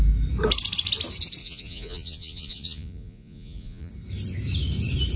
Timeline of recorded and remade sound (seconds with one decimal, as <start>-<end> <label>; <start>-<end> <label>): 0.0-1.4 recorded; 1.4-3.9 remade; 3.9-5.2 recorded